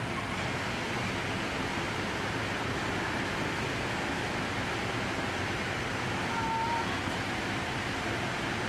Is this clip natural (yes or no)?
yes